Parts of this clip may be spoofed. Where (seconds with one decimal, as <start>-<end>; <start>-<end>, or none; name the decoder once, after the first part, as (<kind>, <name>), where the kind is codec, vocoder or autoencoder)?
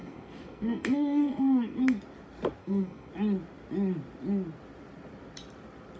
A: 0.0-2.0 (codec, SNAC); 2.6-3.1